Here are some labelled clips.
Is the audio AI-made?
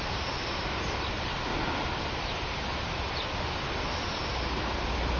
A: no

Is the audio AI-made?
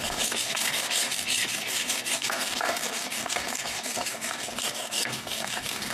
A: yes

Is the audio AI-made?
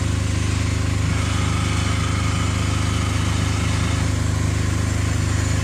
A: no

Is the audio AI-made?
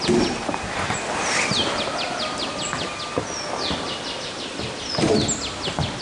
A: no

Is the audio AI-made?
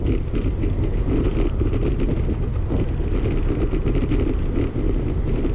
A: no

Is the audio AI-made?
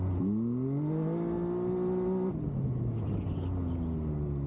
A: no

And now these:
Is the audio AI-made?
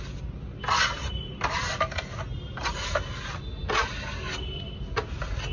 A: no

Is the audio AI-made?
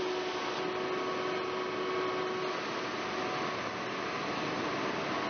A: no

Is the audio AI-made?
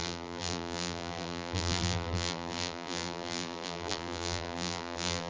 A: yes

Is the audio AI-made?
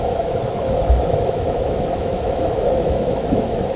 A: yes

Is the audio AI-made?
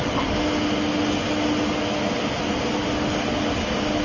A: no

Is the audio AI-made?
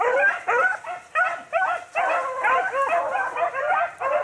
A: no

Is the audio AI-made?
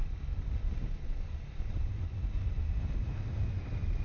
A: no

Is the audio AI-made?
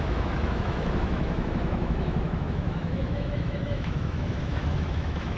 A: yes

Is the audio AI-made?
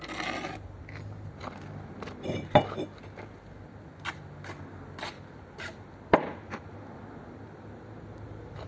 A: no